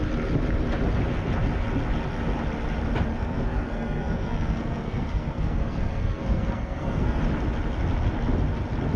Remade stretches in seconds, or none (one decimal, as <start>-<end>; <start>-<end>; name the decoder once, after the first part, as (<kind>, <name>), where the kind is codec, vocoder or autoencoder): 3.1-7.2 (codec, SNAC)